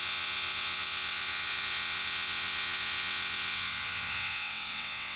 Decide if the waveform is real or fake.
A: fake